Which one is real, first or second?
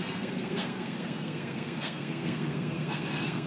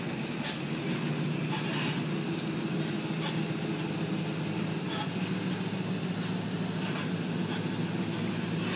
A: second